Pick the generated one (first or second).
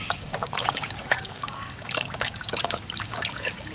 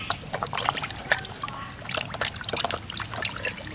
first